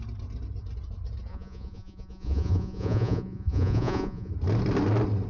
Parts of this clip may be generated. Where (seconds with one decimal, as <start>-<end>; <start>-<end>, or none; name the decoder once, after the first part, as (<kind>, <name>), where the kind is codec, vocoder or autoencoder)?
1.3-4.3 (vocoder, Vocos)